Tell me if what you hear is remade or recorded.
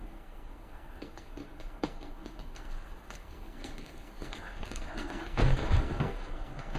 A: remade